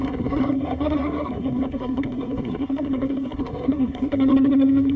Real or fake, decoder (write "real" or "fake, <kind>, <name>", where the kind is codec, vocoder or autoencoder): fake, codec, SNAC